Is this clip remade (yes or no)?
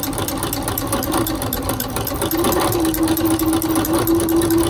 no